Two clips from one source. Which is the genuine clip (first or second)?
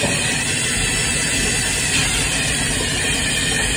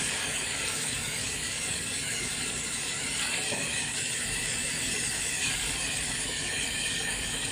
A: first